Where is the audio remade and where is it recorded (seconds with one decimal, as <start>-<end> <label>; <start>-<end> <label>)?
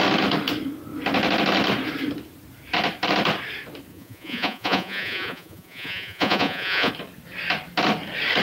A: 0.0-3.9 recorded; 3.9-6.9 remade; 6.9-8.4 recorded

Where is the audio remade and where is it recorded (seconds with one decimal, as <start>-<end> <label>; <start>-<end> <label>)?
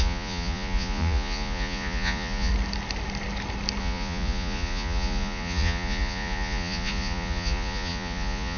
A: 0.0-2.5 remade; 2.5-3.8 recorded; 3.8-8.6 remade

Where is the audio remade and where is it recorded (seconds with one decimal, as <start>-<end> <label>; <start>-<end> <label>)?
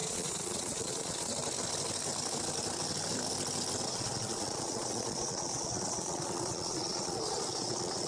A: 0.0-1.3 remade; 1.3-3.9 recorded; 3.9-8.1 remade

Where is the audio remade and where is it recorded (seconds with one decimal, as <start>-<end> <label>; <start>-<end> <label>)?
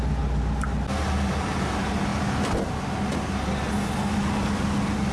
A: 0.0-5.1 recorded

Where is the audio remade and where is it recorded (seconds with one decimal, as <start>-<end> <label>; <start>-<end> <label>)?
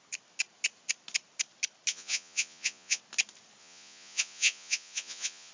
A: 0.0-1.9 recorded; 1.9-3.0 remade; 3.0-3.6 recorded; 3.6-5.5 remade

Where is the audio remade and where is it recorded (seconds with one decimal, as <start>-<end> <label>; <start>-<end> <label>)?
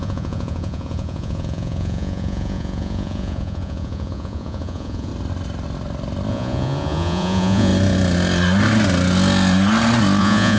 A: 0.0-5.1 remade; 5.1-6.3 recorded; 6.3-7.7 remade; 7.7-10.2 recorded; 10.2-10.6 remade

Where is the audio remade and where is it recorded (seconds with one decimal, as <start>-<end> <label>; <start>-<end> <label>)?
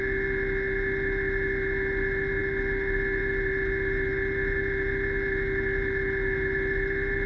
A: 0.0-7.3 recorded